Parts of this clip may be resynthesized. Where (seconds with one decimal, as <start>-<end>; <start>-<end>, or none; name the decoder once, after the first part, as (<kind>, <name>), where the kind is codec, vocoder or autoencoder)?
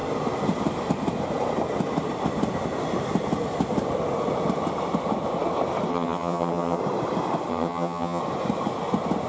5.9-6.8 (vocoder, HiFi-GAN); 7.5-8.2